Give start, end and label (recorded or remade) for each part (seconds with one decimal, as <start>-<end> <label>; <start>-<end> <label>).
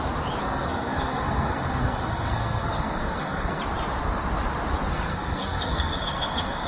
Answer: 0.0-0.4 recorded; 0.4-3.6 remade; 3.6-4.9 recorded; 4.9-6.7 remade